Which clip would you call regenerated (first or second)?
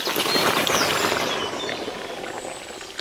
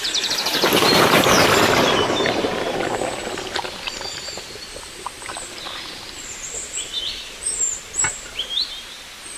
second